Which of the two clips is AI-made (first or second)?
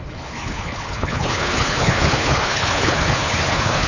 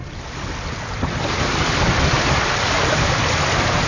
first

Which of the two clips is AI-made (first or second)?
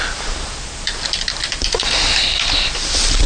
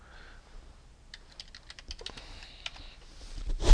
first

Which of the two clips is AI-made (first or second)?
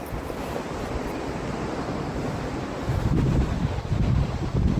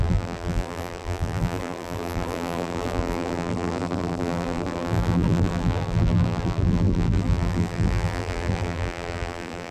second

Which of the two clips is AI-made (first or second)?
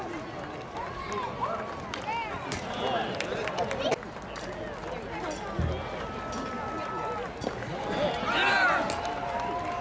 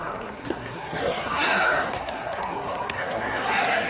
second